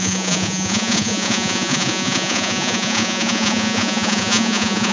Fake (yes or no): yes